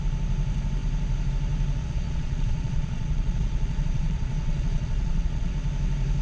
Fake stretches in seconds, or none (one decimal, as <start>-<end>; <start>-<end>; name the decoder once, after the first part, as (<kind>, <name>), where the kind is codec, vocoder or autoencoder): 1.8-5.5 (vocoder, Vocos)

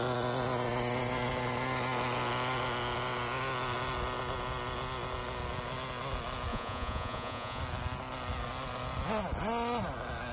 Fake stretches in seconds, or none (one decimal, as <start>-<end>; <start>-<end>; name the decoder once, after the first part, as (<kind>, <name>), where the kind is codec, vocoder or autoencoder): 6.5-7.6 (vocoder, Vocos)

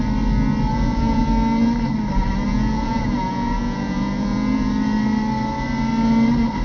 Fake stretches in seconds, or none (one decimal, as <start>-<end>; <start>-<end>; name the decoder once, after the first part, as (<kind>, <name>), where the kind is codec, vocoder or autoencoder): 0.7-1.2 (vocoder, Vocos); 2.5-4.7

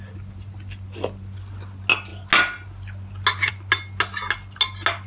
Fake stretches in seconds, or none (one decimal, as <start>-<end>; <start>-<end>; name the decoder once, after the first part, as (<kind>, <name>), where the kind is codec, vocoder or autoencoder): none

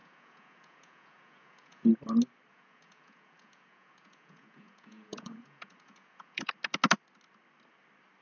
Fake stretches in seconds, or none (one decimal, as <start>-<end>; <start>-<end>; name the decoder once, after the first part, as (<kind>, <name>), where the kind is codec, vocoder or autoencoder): 0.0-1.9 (vocoder, Vocos); 2.5-6.5

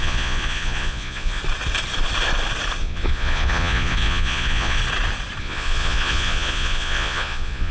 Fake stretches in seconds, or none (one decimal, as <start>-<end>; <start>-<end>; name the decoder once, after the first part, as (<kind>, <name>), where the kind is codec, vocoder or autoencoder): 0.0-1.4 (vocoder, Vocos); 2.8-4.8; 5.4-7.7